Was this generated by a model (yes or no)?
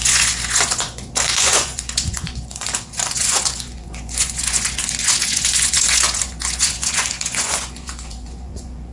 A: yes